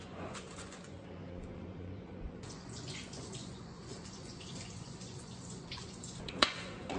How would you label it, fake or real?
fake